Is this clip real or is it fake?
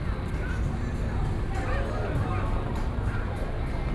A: real